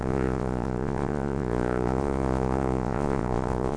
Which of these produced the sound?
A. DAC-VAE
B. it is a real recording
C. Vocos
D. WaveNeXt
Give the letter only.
C